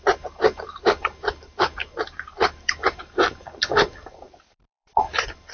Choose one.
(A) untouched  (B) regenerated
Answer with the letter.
B